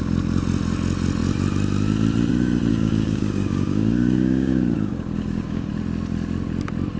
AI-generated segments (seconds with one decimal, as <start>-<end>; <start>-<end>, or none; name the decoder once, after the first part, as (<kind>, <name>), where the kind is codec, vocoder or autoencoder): 2.7-5.7 (codec, DAC)